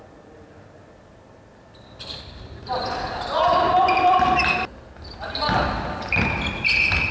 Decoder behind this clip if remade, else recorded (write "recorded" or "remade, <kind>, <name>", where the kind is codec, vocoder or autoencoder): recorded